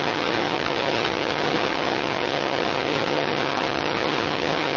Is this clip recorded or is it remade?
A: remade